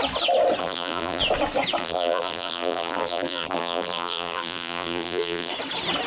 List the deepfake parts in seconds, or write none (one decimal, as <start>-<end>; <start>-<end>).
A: 0.6-1.2; 1.8-5.5